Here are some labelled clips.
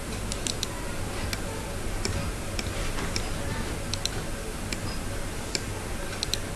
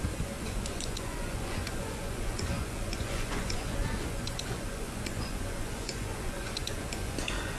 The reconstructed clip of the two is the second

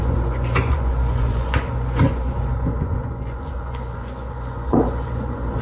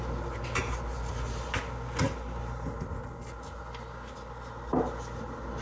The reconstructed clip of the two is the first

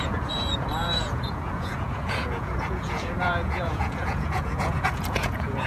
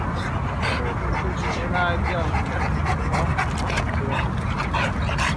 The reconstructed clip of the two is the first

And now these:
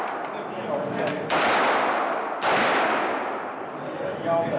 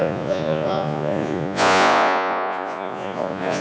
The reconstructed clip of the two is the second